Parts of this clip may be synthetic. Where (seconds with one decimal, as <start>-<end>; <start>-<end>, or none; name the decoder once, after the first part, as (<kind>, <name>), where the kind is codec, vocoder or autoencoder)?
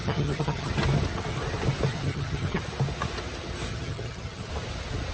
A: 0.0-0.7 (vocoder, HiFi-GAN); 1.9-2.6; 3.7-4.5